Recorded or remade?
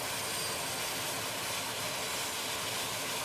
recorded